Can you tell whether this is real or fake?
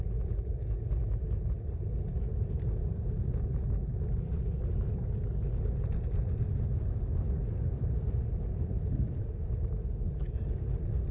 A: real